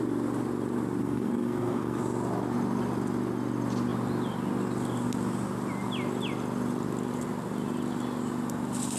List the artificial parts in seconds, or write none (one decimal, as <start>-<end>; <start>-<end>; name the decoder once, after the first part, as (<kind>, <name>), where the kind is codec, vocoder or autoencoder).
1.0-2.0 (codec, SNAC)